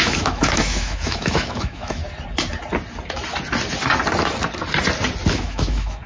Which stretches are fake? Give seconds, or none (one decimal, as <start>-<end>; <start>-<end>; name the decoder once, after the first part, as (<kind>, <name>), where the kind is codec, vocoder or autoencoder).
0.0-2.0 (autoencoder, DAC-VAE); 5.3-6.1